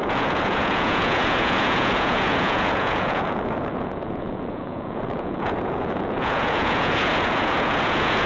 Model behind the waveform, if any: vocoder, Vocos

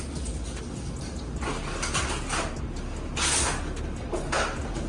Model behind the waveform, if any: none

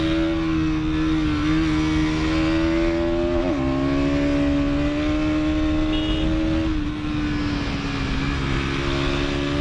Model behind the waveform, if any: none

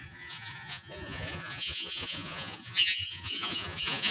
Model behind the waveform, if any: vocoder, Vocos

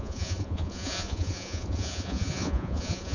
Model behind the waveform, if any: vocoder, Vocos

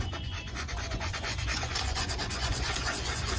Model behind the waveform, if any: vocoder, Vocos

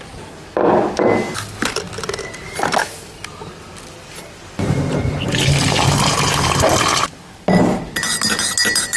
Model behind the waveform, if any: none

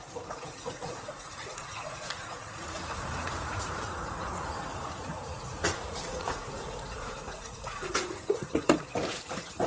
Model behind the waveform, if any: vocoder, Vocos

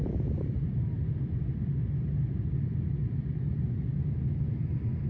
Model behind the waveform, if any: none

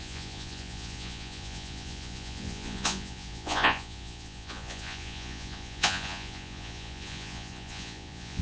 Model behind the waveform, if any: vocoder, Vocos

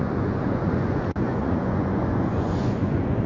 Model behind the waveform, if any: vocoder, Vocos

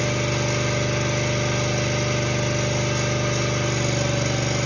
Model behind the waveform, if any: none